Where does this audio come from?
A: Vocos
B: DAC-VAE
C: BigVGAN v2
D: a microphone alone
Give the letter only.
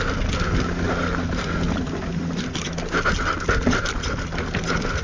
D